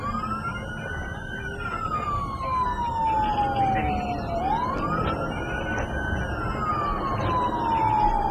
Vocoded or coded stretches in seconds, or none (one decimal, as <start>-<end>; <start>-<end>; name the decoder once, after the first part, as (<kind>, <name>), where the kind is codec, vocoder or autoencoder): none